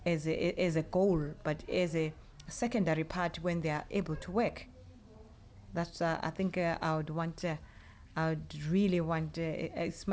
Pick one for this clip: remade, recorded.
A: recorded